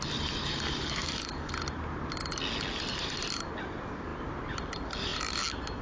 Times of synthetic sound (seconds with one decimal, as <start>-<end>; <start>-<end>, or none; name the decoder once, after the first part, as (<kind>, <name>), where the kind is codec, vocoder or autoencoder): 1.0-1.5 (codec, DAC)